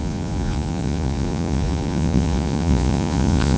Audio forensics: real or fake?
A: fake